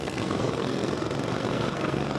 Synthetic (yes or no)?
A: yes